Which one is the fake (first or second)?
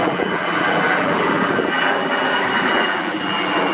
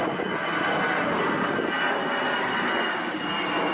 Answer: first